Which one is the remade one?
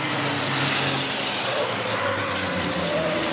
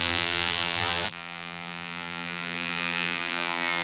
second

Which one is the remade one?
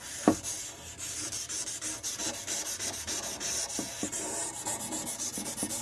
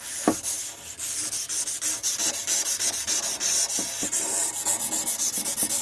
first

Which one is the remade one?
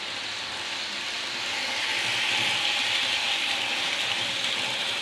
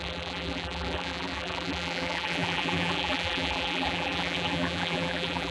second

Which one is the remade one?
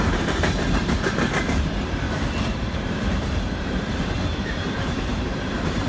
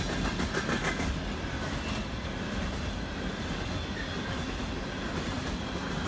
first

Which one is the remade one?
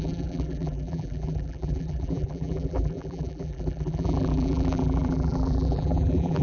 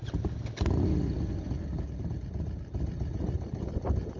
first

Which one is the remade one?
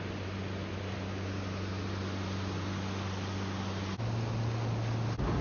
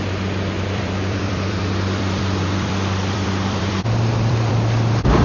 second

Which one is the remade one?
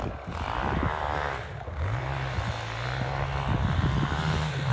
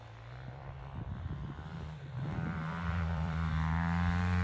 second